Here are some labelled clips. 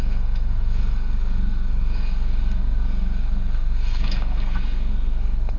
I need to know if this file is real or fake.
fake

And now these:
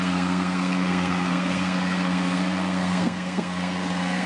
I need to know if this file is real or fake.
fake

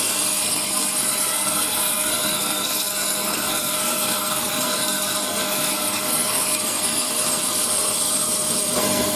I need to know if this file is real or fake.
fake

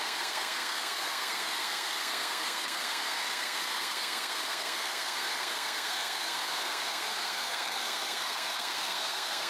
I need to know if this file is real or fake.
fake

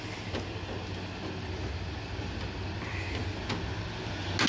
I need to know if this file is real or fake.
real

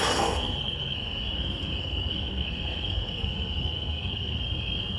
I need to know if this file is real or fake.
fake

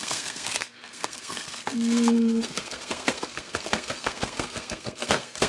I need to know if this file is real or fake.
fake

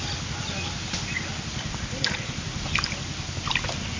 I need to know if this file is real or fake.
real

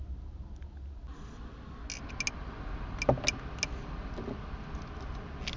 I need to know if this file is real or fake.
real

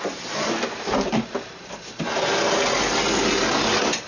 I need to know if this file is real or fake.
real